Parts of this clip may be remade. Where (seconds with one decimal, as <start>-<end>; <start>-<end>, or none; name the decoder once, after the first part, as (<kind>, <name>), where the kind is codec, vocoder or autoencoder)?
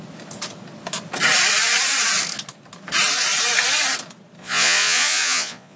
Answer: 4.4-5.8 (vocoder, Vocos)